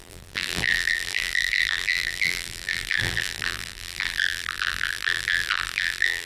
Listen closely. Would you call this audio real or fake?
fake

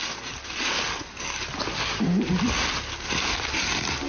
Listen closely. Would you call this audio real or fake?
real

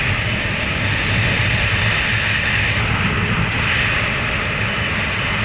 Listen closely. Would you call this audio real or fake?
real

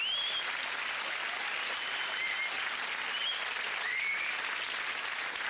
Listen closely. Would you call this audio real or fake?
real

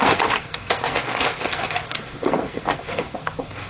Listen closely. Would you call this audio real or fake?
fake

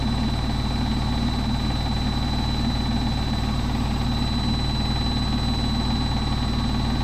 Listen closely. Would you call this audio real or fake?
real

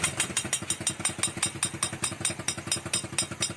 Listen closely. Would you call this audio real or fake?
real